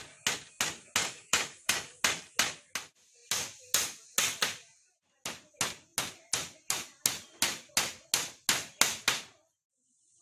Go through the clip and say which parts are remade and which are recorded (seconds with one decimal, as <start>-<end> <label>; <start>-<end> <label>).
0.0-1.0 recorded; 1.0-2.0 remade; 2.0-10.2 recorded